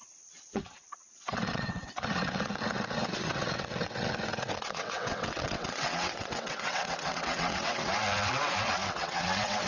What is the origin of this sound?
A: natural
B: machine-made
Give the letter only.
B